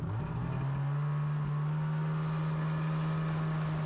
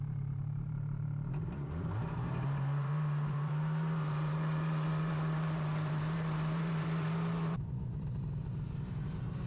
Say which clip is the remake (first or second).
second